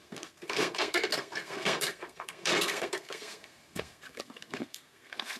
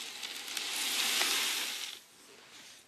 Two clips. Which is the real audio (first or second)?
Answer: second